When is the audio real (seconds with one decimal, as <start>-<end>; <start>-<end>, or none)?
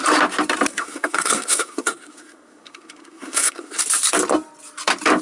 0.0-0.7; 3.8-5.2